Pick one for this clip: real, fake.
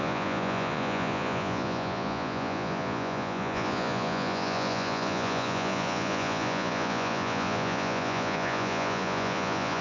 fake